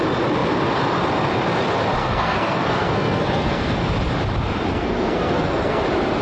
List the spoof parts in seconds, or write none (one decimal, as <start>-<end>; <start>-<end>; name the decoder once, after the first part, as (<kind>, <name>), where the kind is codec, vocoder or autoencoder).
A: 2.0-3.8 (codec, SNAC); 4.7-5.8